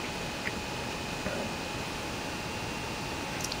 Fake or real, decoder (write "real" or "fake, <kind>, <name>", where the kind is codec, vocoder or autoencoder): real